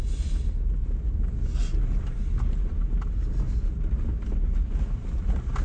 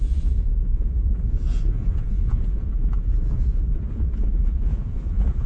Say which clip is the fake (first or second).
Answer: second